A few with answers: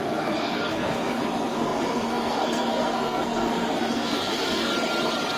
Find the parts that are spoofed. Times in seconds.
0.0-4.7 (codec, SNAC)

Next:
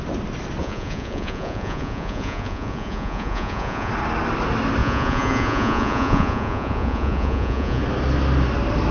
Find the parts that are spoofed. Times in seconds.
0.6-3.9 (vocoder, Vocos); 4.8-7.8

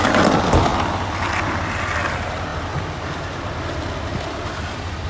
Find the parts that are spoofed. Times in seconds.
none